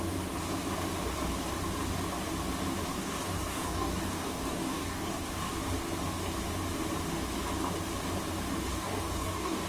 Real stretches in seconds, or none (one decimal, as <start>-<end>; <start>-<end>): 0.0-2.9; 5.5-8.7